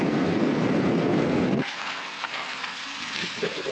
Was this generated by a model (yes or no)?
yes